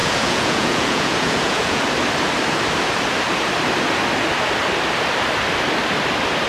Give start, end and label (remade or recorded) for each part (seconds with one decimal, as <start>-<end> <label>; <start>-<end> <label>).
0.0-1.8 remade; 1.8-6.5 recorded